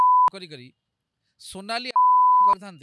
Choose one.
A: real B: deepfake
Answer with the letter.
A